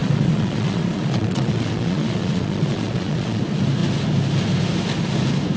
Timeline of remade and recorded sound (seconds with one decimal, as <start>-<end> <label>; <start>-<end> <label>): 0.0-3.4 remade; 3.4-5.6 recorded